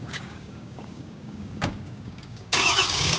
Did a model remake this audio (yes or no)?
yes